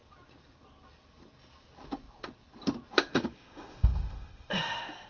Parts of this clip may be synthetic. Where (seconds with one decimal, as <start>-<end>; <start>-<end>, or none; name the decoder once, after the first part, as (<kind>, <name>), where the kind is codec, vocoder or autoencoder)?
3.1-5.1 (autoencoder, DAC-VAE)